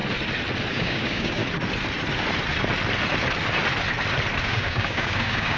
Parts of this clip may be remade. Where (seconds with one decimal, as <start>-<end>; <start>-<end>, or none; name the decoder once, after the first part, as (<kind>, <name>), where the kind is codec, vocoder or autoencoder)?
0.7-1.4 (codec, DAC); 4.4-5.6